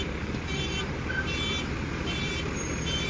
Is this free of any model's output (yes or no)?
no